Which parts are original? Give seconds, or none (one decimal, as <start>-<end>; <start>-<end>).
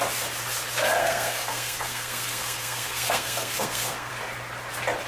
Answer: 0.0-1.0; 4.1-5.1